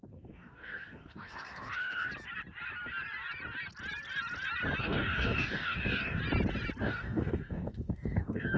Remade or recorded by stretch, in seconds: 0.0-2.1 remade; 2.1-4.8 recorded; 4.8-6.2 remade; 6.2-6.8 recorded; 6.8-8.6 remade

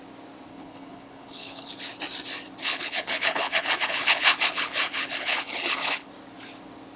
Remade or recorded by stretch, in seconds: 0.0-0.5 recorded; 0.5-1.7 remade; 1.7-2.6 recorded; 2.6-6.1 remade; 6.1-7.0 recorded

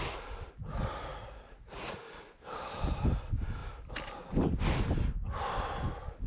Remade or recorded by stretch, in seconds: 0.0-1.1 recorded; 1.1-2.0 remade; 2.0-6.3 recorded

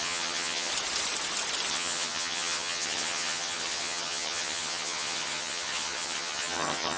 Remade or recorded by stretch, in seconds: 0.0-0.7 remade; 0.7-1.7 recorded; 1.7-7.0 remade

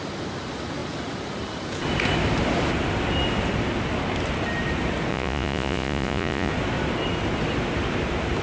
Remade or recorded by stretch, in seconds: 0.0-5.1 recorded; 5.1-6.5 remade; 6.5-8.4 recorded

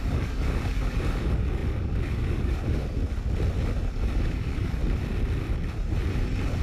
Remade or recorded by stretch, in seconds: 0.0-2.8 remade; 2.8-3.9 recorded; 3.9-4.8 remade; 4.8-6.6 recorded

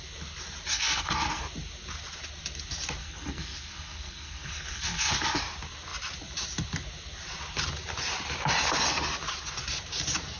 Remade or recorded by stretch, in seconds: 0.0-0.7 recorded; 0.7-1.4 remade; 1.4-3.0 recorded; 3.0-5.4 remade; 5.4-10.4 recorded